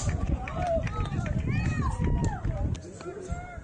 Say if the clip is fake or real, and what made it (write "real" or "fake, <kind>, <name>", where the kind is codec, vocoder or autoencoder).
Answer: real